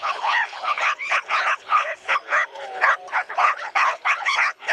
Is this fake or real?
fake